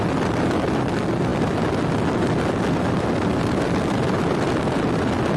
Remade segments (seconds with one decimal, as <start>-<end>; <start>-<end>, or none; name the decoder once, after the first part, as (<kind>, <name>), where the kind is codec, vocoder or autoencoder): none